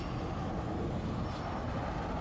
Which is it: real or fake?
real